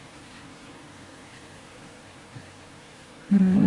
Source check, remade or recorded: remade